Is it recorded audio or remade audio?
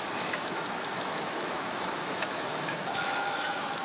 remade